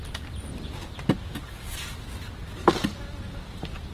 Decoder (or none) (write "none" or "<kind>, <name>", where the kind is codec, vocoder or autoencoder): none